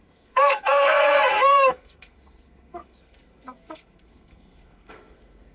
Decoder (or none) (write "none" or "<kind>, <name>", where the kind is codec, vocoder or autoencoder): codec, SNAC